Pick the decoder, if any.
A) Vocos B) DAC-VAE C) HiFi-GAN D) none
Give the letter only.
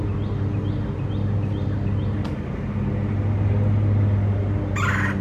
D